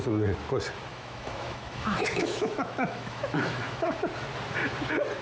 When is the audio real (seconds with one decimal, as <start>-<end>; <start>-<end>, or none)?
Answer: 0.0-0.9; 4.0-5.2